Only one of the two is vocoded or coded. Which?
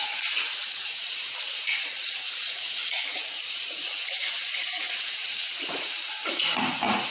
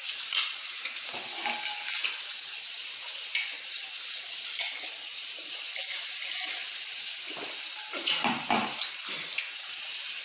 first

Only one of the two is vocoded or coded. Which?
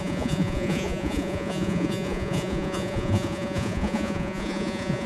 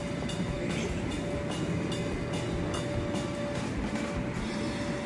first